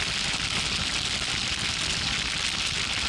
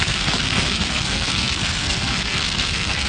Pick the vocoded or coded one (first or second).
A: second